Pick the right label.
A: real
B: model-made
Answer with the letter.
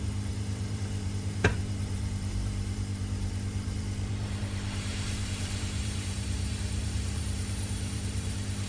B